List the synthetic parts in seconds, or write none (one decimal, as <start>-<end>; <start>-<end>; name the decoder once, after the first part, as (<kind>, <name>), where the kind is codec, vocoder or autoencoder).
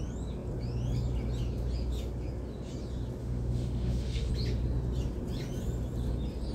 3.2-4.3 (autoencoder, DAC-VAE)